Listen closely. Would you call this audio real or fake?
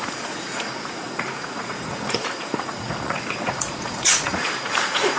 fake